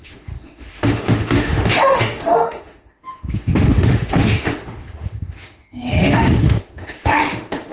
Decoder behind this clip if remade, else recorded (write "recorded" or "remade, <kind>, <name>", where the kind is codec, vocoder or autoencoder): remade, autoencoder, DAC-VAE